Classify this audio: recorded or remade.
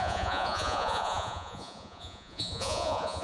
remade